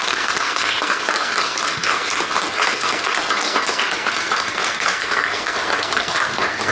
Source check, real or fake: fake